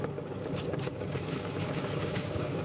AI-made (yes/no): yes